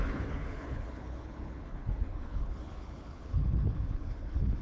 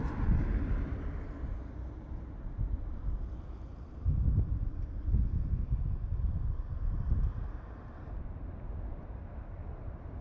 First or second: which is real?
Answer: second